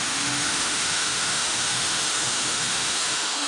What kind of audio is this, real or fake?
fake